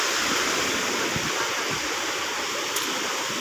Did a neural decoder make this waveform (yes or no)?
yes